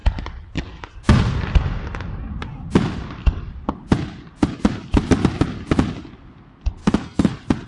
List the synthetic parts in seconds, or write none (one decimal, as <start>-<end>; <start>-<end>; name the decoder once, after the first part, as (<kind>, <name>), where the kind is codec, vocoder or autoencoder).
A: 6.8-7.3 (codec, SNAC)